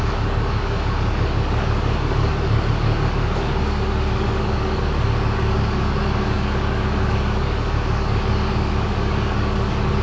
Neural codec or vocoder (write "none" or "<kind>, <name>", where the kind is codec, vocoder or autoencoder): codec, DAC